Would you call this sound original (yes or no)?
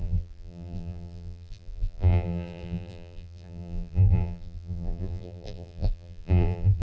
no